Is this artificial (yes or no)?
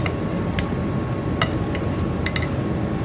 no